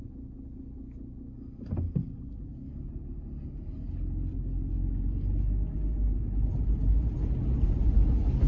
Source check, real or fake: real